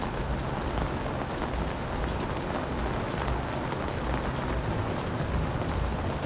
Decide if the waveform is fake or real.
real